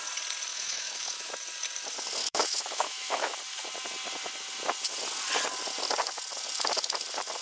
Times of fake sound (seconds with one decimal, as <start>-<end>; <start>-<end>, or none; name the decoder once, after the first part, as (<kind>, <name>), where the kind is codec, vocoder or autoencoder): 0.5-1.3 (autoencoder, DAC-VAE); 2.2-3.4